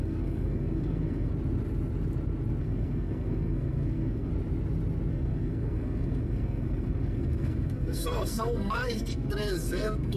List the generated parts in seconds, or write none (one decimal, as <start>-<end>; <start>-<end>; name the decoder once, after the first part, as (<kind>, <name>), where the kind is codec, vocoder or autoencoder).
0.0-1.3 (codec, SNAC); 2.6-4.3; 5.1-10.2